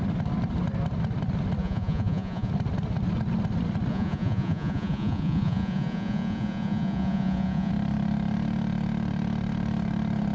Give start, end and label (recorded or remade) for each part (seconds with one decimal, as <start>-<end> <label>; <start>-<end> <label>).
0.0-1.6 recorded; 1.6-2.5 remade; 2.5-3.9 recorded; 3.9-7.7 remade; 7.7-10.3 recorded